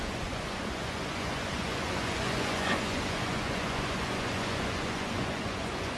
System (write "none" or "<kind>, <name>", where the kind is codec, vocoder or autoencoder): vocoder, Vocos